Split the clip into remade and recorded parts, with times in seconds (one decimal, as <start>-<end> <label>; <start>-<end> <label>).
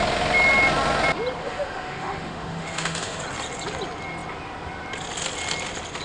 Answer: 0.0-1.4 recorded; 1.4-3.2 remade; 3.2-6.0 recorded